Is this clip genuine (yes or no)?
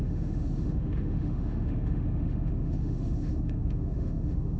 no